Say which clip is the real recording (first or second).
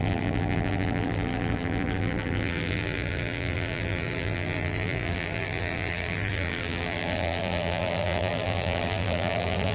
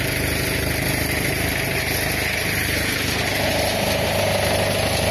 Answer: second